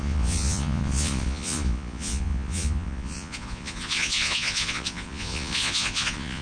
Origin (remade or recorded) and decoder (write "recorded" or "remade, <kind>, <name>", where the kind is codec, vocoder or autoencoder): remade, vocoder, Vocos